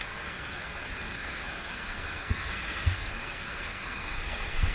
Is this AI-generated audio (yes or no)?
yes